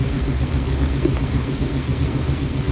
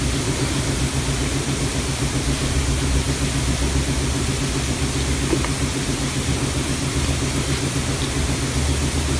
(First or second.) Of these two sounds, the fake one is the first